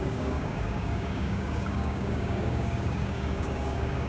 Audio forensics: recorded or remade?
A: remade